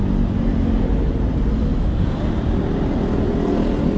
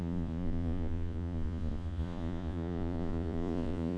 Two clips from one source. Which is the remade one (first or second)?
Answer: second